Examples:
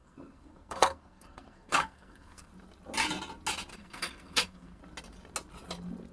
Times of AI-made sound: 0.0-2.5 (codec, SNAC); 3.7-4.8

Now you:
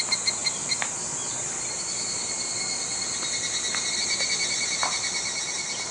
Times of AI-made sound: none

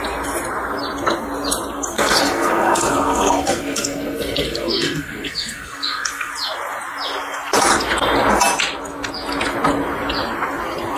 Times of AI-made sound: 1.9-6.3 (codec, SNAC)